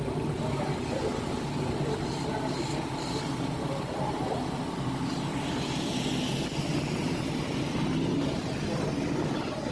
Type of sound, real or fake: real